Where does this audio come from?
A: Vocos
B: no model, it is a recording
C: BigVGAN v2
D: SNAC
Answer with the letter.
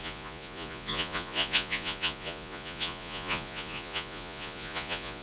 A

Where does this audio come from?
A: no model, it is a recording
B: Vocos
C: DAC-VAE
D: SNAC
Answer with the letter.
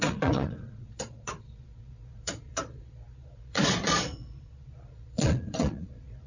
B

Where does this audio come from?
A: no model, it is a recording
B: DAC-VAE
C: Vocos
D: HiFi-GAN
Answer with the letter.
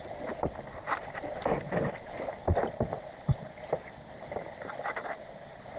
A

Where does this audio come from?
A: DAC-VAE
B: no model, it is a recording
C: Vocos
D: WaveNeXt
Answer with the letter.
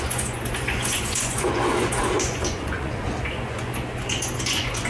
C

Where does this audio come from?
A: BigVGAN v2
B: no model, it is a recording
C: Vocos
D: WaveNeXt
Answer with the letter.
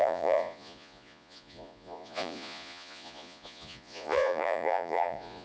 C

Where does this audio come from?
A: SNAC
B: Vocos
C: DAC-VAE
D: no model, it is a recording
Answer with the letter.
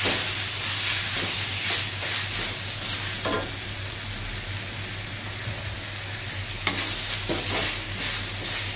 D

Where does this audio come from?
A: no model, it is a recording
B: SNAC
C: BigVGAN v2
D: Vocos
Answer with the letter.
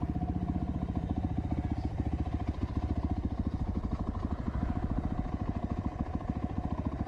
A